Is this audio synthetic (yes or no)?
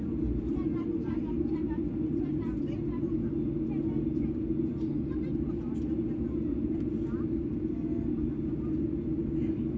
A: no